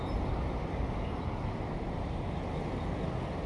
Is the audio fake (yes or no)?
no